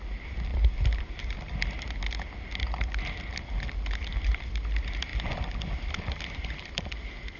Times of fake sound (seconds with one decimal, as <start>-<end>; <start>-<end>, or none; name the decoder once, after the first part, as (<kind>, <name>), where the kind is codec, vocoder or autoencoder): none

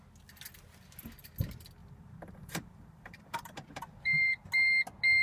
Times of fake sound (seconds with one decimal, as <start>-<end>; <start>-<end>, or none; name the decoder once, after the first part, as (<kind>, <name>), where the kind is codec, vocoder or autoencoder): 1.8-4.5 (vocoder, BigVGAN v2)

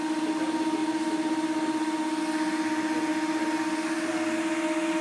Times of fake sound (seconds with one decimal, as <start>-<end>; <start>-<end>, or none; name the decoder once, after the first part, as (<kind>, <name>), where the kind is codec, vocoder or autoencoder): 0.8-2.2 (vocoder, BigVGAN v2)